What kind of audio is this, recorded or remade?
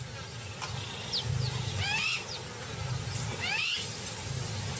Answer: recorded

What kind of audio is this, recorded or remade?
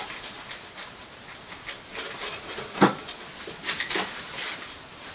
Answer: recorded